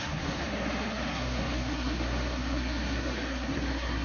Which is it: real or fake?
fake